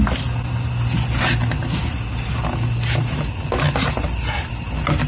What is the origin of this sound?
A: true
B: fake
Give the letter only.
A